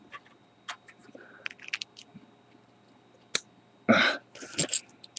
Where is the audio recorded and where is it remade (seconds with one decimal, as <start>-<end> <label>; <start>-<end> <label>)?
0.0-5.2 recorded